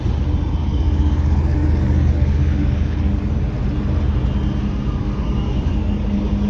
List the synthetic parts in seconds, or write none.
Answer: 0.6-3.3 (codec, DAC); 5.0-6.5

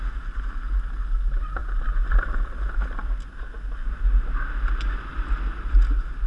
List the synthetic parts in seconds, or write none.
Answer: none

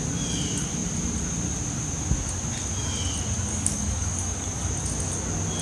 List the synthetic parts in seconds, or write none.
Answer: 3.5-4.7 (codec, DAC)

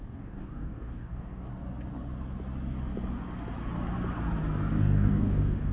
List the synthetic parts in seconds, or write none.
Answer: 0.0-1.5 (codec, DAC); 4.7-5.7

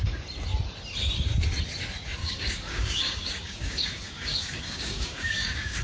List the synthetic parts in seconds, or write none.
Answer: 2.2-5.8 (codec, DAC)

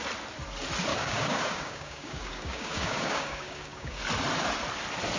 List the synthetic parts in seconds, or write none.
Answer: 0.9-4.0 (codec, DAC)